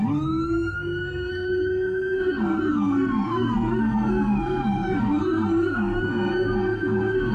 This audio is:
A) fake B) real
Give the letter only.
A